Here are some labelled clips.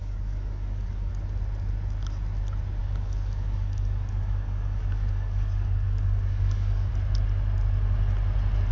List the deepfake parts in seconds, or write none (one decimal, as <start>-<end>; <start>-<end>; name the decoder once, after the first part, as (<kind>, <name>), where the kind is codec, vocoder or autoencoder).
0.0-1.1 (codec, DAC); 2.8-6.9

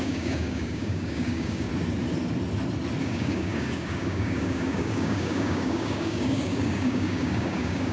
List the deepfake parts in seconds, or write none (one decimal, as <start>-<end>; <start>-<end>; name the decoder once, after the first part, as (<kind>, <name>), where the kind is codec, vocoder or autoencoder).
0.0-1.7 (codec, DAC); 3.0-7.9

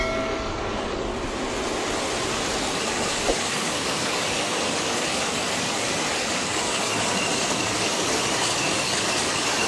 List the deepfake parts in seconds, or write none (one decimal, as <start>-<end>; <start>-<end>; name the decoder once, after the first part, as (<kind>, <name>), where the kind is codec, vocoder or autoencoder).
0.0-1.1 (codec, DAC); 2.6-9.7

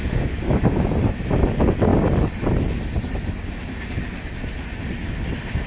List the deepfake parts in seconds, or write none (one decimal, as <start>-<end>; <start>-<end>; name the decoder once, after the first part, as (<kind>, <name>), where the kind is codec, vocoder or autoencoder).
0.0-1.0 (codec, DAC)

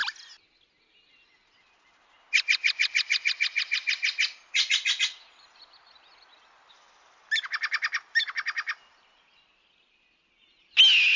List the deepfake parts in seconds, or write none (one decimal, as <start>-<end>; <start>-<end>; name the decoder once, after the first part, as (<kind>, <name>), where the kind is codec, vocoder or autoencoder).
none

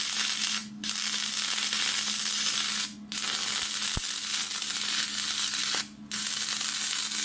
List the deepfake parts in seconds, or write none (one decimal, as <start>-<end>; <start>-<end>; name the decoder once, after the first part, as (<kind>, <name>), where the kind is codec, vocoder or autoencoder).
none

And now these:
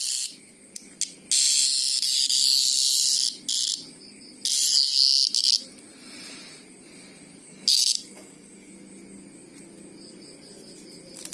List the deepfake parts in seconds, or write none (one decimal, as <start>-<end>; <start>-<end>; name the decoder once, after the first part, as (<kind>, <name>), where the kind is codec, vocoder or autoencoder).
7.4-8.7 (codec, DAC)